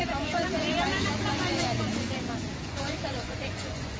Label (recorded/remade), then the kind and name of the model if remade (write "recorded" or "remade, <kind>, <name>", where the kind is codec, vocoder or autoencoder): remade, vocoder, Vocos